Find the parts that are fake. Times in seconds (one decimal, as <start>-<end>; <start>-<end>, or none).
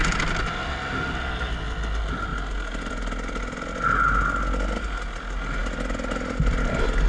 none